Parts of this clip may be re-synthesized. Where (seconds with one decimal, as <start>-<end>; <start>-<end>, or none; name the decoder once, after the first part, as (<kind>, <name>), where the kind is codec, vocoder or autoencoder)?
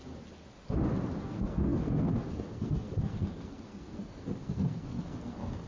1.2-5.7 (codec, SNAC)